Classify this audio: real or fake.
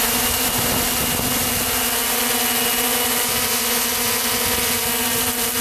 real